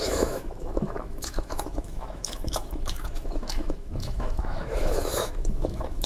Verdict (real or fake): fake